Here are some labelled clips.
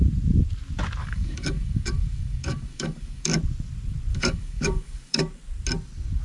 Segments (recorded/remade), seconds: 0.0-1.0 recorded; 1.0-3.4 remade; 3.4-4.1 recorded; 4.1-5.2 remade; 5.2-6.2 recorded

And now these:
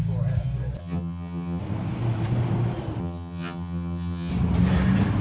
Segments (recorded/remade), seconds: 0.0-0.8 recorded; 0.8-1.6 remade; 1.6-3.0 recorded; 3.0-4.3 remade; 4.3-5.2 recorded

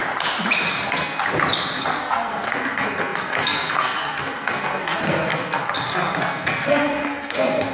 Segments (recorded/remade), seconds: 0.0-0.7 recorded; 0.7-1.2 remade; 1.2-1.8 recorded; 1.8-7.7 remade

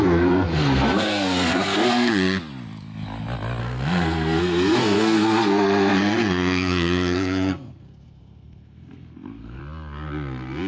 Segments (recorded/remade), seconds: 0.0-2.1 remade; 2.1-3.6 recorded; 3.6-9.6 remade; 9.6-10.7 recorded

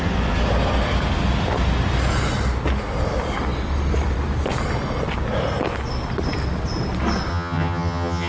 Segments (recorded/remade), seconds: 0.0-7.3 recorded; 7.3-8.3 remade

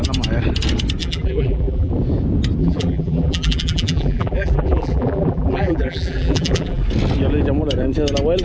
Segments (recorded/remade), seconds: 0.0-1.0 recorded; 1.0-1.9 remade; 1.9-2.6 recorded; 2.6-6.8 remade; 6.8-8.4 recorded

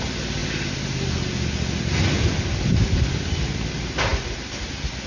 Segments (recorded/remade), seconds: 0.0-5.1 recorded

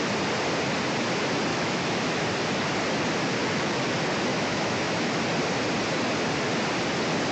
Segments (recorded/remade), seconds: 0.0-1.5 recorded; 1.5-2.2 remade; 2.2-3.4 recorded; 3.4-3.9 remade; 3.9-4.3 recorded; 4.3-5.2 remade; 5.2-7.3 recorded